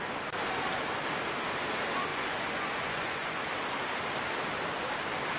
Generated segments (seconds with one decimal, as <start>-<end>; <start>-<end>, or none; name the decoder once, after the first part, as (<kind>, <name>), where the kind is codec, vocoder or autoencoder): 2.1-3.4 (vocoder, Vocos)